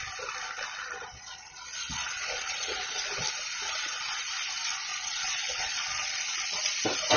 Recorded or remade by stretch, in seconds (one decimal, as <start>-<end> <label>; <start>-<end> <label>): 0.0-1.0 recorded; 1.0-3.2 remade; 3.2-4.9 recorded; 4.9-6.7 remade; 6.7-7.2 recorded